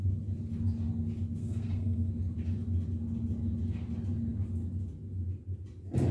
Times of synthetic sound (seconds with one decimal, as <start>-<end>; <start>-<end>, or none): 1.4-2.1